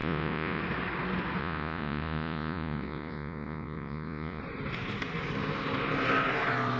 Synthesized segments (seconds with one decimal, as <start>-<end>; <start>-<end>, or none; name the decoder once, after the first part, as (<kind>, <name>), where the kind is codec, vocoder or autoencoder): 0.0-0.6 (vocoder, Vocos); 1.4-4.4